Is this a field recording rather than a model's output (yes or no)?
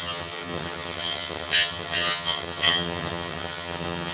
no